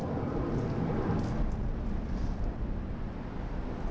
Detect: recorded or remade recorded